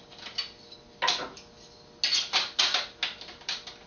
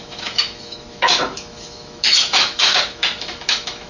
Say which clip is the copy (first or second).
second